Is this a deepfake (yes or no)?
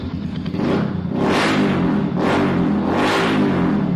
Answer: no